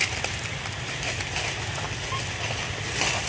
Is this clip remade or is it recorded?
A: recorded